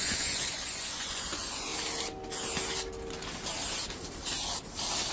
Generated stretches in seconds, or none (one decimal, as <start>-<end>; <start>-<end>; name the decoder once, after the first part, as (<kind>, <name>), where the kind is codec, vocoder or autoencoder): 0.0-1.7 (vocoder, Vocos)